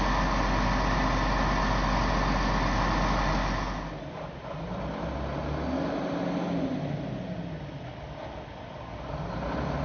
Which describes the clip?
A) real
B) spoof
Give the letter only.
A